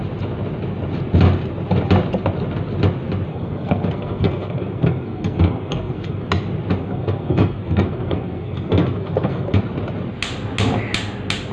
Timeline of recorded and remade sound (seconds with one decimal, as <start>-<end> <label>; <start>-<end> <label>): 0.0-3.3 recorded; 3.3-6.3 remade; 6.3-6.8 recorded; 6.8-9.6 remade; 9.6-11.5 recorded